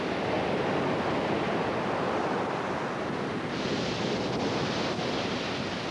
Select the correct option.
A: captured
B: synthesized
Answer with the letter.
A